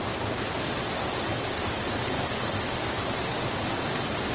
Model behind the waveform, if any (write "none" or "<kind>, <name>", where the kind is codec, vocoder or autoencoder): none